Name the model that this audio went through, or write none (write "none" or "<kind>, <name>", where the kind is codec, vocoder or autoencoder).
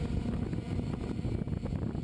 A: none